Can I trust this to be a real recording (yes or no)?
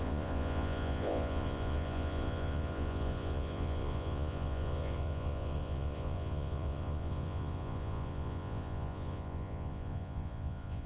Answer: no